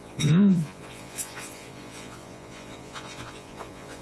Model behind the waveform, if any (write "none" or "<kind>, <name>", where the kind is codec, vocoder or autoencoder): vocoder, Vocos